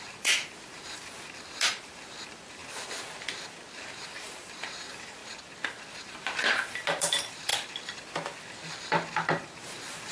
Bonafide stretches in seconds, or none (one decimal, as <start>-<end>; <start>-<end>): 2.6-3.7; 5.2-6.0; 7.5-9.3